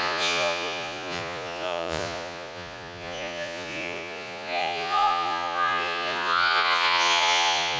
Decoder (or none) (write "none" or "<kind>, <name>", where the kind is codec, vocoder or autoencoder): vocoder, Vocos